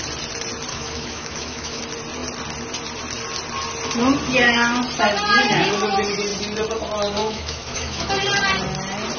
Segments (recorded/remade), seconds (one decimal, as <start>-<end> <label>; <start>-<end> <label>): 0.0-0.7 recorded; 0.7-1.8 remade; 1.8-7.2 recorded; 7.2-8.1 remade; 8.1-9.2 recorded